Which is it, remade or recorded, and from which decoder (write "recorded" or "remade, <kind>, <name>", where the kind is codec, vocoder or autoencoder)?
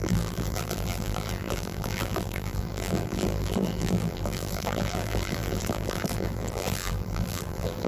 remade, vocoder, BigVGAN v2